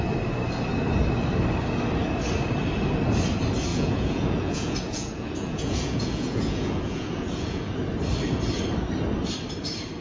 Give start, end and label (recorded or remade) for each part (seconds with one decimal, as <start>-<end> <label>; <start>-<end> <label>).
0.0-3.7 recorded; 3.7-7.7 remade; 7.7-10.0 recorded